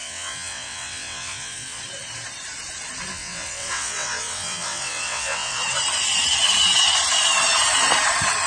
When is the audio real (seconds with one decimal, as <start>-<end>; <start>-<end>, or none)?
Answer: 1.8-3.1; 5.6-8.5